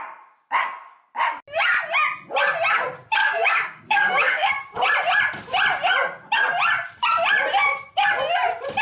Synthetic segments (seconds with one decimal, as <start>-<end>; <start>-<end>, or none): 3.2-4.5